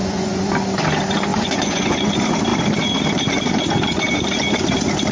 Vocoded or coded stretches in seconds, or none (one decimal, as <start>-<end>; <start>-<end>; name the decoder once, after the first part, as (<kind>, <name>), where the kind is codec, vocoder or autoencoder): 0.0-0.5 (vocoder, Vocos); 1.3-2.1